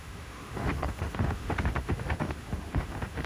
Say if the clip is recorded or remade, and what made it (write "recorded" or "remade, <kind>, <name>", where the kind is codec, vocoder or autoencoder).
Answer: remade, autoencoder, DAC-VAE